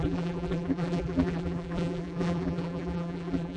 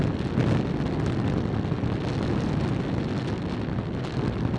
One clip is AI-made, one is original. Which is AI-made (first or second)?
first